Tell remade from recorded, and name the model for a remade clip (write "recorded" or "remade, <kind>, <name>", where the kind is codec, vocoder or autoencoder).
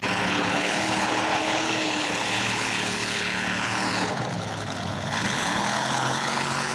remade, codec, HILCodec